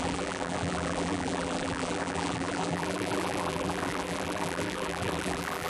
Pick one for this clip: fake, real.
fake